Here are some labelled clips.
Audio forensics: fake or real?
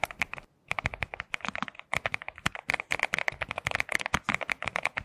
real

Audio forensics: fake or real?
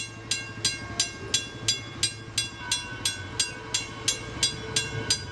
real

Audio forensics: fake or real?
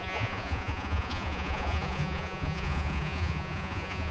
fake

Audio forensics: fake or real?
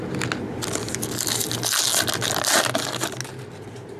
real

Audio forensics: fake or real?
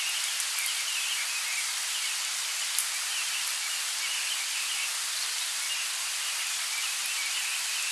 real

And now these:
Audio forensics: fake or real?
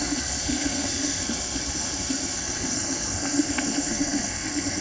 fake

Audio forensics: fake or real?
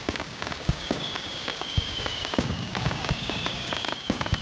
fake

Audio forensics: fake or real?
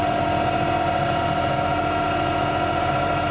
real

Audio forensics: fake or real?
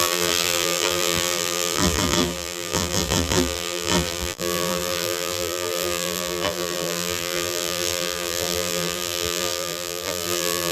fake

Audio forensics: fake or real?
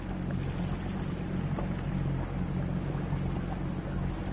real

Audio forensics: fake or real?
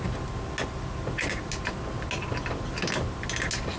real